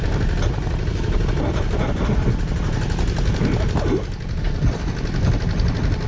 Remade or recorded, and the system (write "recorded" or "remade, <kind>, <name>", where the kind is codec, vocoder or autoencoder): recorded